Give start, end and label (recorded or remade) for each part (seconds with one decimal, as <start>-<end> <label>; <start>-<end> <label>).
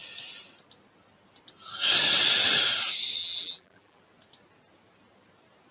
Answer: 0.0-3.2 recorded; 3.2-4.0 remade; 4.0-5.7 recorded